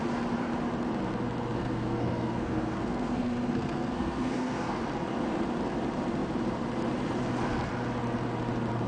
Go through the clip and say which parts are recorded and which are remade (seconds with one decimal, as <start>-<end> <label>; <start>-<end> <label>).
0.0-1.6 recorded; 1.6-4.8 remade; 4.8-8.9 recorded